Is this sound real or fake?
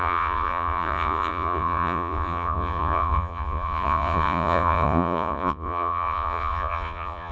fake